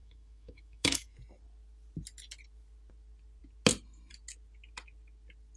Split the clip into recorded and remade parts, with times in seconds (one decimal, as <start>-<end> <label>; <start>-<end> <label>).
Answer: 0.0-1.2 remade; 1.2-5.6 recorded